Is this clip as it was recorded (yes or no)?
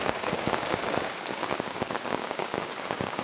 no